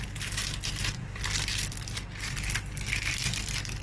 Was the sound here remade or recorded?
recorded